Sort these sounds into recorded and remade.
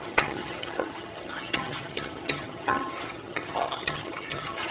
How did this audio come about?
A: remade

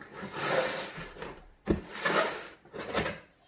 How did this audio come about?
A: recorded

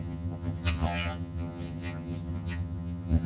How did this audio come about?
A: remade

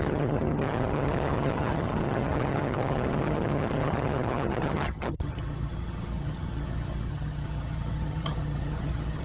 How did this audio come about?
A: remade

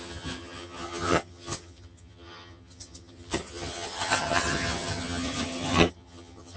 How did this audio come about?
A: remade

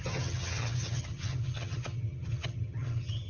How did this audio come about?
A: remade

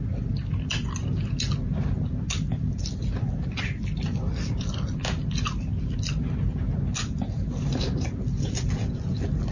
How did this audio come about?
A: recorded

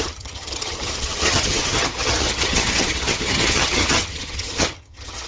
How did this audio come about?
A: remade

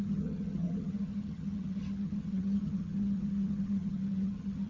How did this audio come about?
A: remade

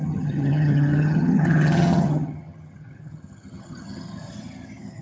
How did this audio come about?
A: remade